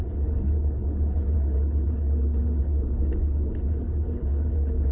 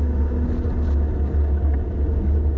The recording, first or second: second